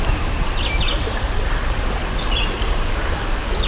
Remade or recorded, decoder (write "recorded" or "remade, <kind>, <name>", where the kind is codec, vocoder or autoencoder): recorded